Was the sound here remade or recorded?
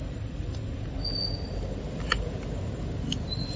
recorded